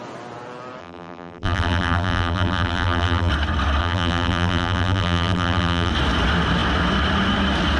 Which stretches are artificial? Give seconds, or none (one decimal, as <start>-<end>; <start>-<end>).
0.8-3.3; 3.8-5.9